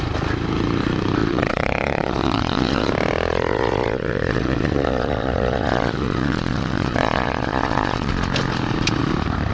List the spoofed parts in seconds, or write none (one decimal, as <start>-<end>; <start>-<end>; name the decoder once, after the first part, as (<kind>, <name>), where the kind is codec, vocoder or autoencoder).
1.2-2.9 (vocoder, Vocos); 3.3-8.1